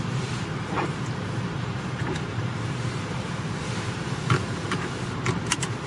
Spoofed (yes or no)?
yes